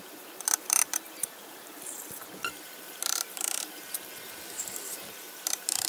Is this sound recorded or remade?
remade